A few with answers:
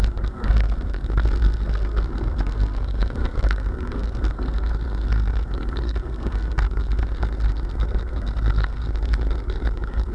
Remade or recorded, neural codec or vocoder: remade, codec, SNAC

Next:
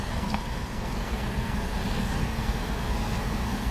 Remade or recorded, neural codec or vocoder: remade, codec, SNAC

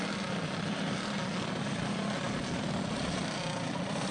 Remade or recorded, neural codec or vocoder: recorded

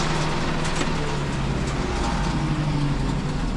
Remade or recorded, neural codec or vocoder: recorded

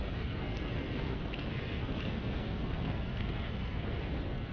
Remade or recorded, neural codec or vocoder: remade, codec, SNAC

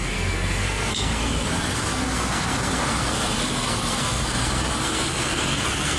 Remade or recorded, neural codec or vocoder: remade, codec, SNAC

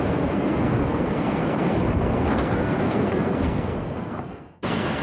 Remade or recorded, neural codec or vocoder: remade, codec, SNAC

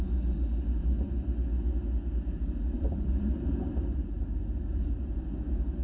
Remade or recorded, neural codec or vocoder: recorded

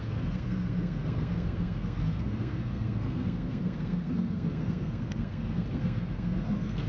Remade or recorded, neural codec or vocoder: remade, codec, SNAC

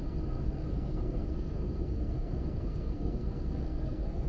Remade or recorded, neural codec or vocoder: remade, codec, SNAC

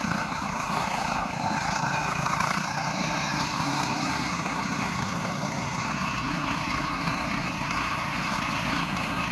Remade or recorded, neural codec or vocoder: remade, codec, SNAC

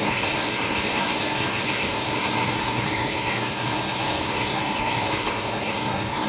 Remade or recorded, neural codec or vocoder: remade, codec, SNAC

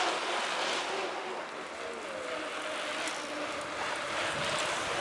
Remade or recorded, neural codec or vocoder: recorded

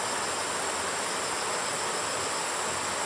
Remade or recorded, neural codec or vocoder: recorded